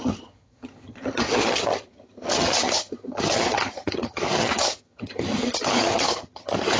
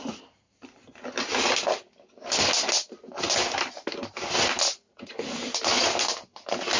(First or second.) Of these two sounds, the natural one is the second